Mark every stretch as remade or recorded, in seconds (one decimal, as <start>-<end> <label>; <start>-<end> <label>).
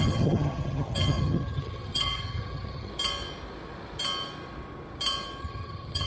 0.0-2.9 remade; 2.9-5.4 recorded; 5.4-6.1 remade